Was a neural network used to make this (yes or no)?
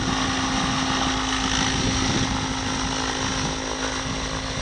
no